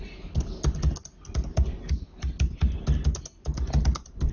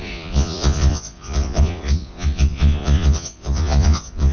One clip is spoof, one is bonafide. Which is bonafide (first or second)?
first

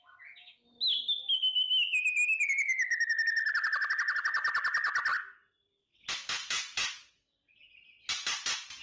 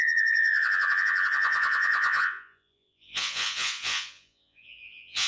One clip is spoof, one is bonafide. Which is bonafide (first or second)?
first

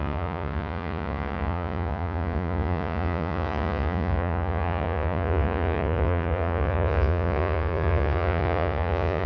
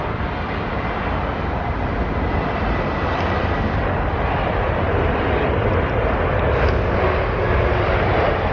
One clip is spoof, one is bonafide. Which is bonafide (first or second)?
second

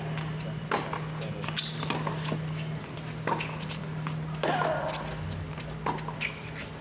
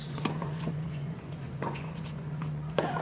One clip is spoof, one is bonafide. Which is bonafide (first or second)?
first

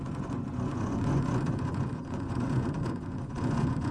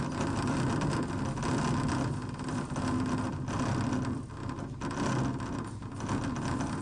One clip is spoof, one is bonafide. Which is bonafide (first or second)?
second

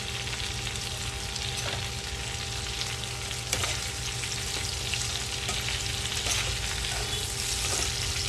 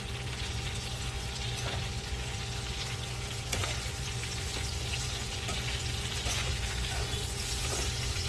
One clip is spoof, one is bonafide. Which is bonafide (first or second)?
first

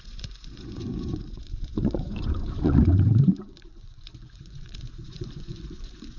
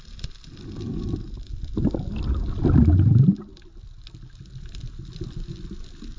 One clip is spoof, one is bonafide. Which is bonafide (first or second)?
second